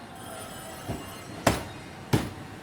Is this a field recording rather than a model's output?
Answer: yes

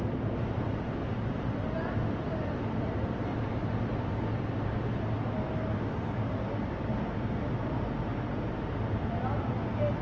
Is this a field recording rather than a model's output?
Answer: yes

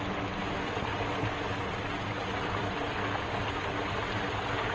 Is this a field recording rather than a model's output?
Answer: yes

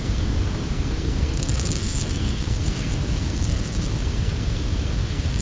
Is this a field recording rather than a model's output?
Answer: no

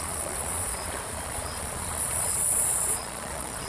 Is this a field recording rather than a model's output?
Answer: no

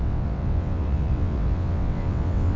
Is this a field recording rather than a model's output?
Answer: no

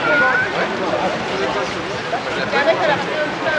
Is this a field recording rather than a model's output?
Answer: yes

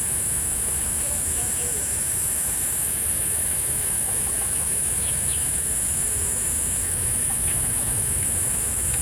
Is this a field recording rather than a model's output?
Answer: no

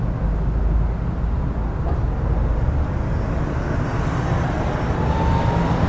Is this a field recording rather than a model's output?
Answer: yes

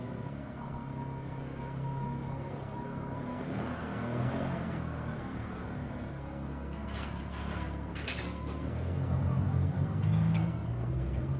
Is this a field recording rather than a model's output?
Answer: no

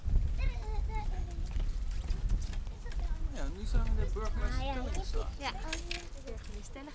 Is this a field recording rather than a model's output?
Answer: yes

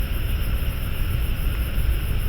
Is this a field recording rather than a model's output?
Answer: yes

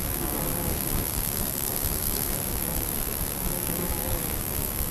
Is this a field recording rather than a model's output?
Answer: no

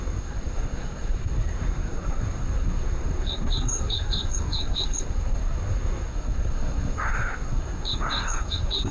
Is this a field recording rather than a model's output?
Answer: no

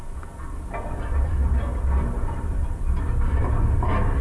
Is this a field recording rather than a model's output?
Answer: yes